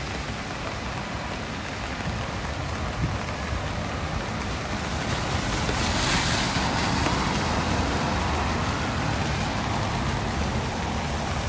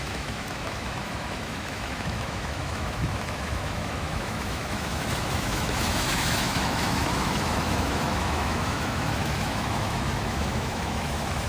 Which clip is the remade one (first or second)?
second